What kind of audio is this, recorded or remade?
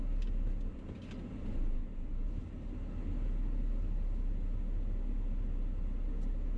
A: recorded